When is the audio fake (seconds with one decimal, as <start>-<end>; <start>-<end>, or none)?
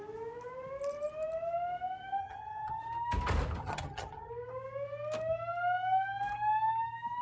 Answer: 2.2-2.8; 3.6-4.3